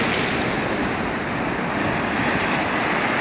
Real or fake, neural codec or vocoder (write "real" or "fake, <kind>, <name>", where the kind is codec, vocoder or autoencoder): real